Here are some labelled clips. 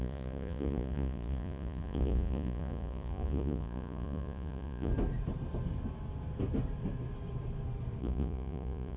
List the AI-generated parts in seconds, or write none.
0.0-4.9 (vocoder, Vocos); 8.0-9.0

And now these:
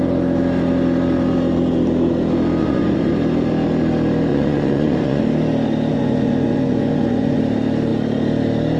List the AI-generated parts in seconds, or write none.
2.6-3.1 (vocoder, Vocos); 4.3-5.2; 5.9-7.4

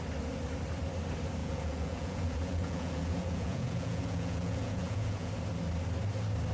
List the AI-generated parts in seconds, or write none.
1.4-5.3 (vocoder, Vocos)

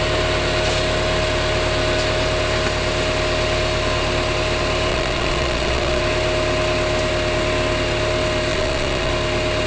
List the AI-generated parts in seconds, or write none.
4.9-6.0 (vocoder, Vocos); 8.5-9.1

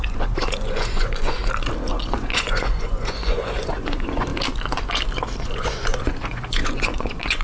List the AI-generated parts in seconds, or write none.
0.0-1.4 (vocoder, Vocos); 2.1-4.3; 5.4-7.4

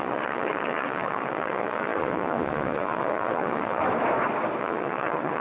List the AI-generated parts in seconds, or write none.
0.0-3.8 (vocoder, Vocos); 4.6-5.4